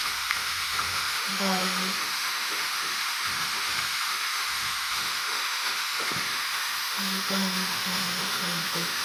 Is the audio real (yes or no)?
no